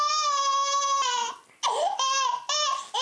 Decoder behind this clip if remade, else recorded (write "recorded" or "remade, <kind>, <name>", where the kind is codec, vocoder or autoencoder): recorded